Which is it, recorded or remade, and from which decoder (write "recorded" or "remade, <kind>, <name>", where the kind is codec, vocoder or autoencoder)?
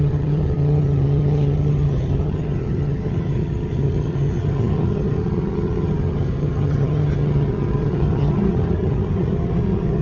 remade, vocoder, HiFi-GAN